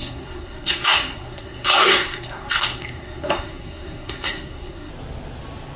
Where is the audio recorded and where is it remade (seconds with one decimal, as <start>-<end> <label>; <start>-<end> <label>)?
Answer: 0.0-4.9 remade; 4.9-5.8 recorded